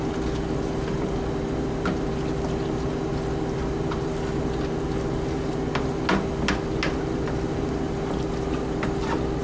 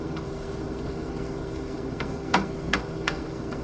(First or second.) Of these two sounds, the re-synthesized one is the second